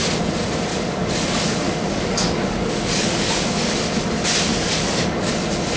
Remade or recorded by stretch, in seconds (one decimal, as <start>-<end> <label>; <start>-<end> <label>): 0.0-0.7 recorded; 0.7-3.8 remade; 3.8-4.5 recorded; 4.5-5.3 remade; 5.3-5.8 recorded